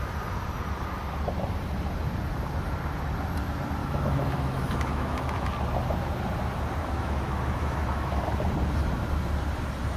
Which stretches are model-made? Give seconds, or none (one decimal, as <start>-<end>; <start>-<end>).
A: 3.8-5.5; 6.8-8.2